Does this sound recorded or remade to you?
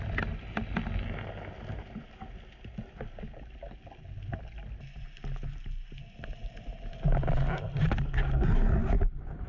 recorded